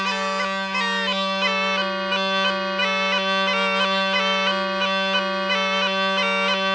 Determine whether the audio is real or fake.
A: real